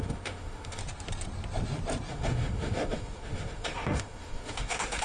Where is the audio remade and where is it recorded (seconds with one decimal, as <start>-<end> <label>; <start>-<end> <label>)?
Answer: 0.0-0.8 remade; 0.8-2.1 recorded; 2.1-5.0 remade